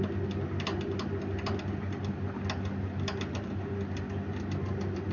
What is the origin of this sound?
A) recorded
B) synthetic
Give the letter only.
A